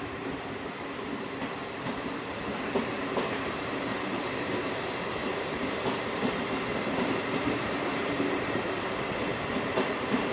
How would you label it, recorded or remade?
remade